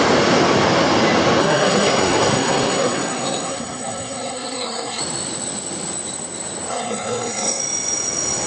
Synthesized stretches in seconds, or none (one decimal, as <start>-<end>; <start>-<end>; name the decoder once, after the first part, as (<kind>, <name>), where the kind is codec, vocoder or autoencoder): 1.4-5.0 (codec, SNAC); 6.7-7.6